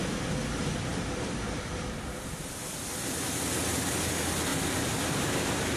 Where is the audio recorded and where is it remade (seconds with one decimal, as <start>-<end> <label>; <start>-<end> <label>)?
0.0-0.9 recorded; 0.9-2.8 remade; 2.8-4.5 recorded; 4.5-5.2 remade; 5.2-5.8 recorded